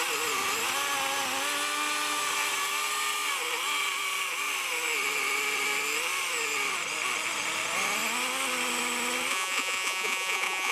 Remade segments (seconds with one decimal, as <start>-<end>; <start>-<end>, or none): 9.3-10.7